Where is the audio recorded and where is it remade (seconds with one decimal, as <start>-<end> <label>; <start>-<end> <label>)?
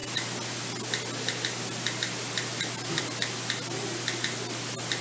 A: 0.0-5.0 recorded